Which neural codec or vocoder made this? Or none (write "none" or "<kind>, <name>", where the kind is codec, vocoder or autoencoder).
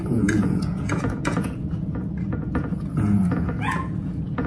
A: vocoder, Vocos